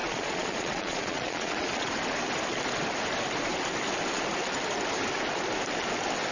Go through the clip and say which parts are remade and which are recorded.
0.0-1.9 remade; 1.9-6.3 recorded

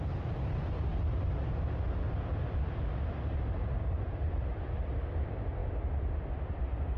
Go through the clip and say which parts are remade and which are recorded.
0.0-7.0 recorded

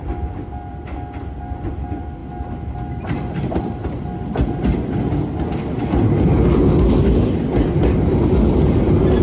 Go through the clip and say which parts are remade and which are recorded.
0.0-2.2 remade; 2.2-3.0 recorded; 3.0-3.8 remade; 3.8-9.2 recorded

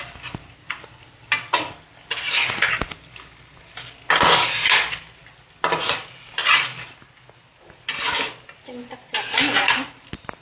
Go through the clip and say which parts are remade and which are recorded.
0.0-10.4 recorded

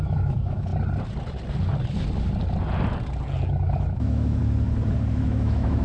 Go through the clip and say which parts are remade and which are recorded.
0.0-0.7 remade; 0.7-3.9 recorded; 3.9-4.4 remade; 4.4-5.1 recorded; 5.1-5.8 remade

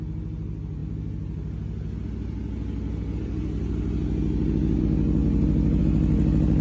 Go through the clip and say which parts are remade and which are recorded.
0.0-6.6 recorded

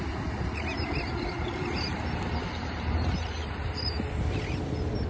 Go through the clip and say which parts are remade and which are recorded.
0.0-2.6 recorded; 2.6-3.5 remade; 3.5-5.1 recorded

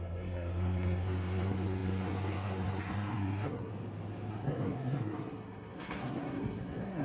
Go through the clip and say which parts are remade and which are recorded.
0.0-3.7 remade; 3.7-4.3 recorded; 4.3-7.0 remade